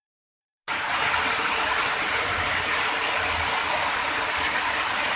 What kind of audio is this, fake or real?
real